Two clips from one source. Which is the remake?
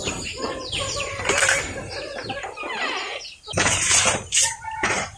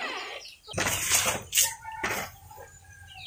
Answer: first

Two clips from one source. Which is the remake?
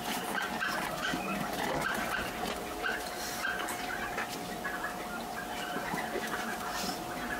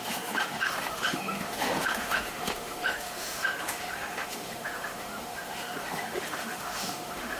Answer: second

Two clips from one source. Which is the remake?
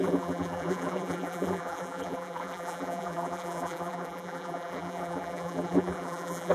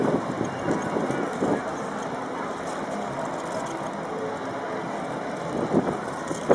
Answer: first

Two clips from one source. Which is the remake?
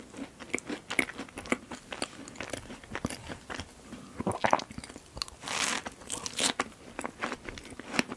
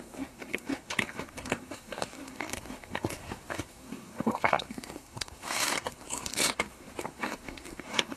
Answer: second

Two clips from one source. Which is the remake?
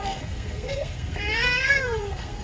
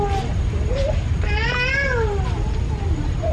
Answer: first